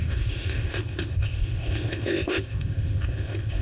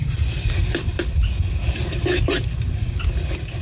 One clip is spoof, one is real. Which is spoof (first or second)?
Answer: first